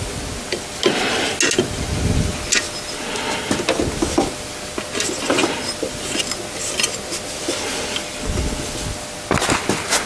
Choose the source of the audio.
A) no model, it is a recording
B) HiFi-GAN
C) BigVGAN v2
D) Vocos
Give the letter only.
A